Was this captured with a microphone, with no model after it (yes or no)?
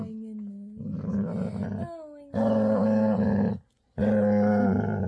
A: yes